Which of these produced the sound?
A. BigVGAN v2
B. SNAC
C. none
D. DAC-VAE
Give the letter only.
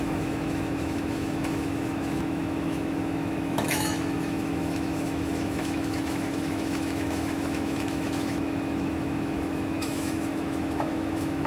D